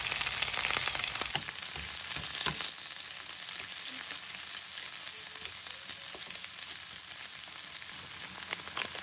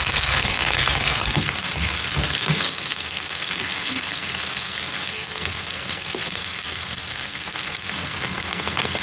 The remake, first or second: second